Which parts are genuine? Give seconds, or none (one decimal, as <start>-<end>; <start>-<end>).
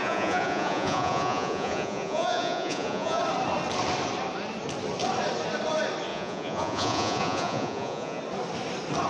3.2-6.1; 8.2-9.1